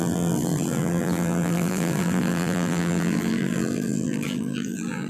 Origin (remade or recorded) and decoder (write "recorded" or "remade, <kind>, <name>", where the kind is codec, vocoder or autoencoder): remade, vocoder, BigVGAN v2